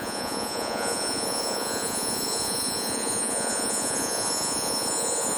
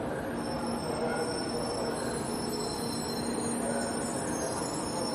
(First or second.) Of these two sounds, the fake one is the first